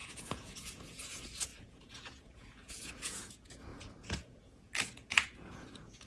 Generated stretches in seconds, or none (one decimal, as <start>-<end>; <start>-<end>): 0.0-6.1